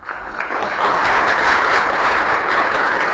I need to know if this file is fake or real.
fake